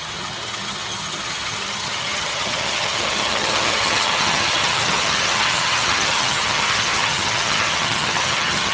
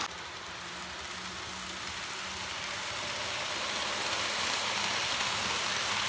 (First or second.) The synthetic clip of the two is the first